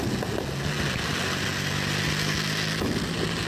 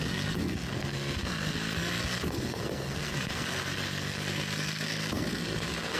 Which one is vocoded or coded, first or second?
second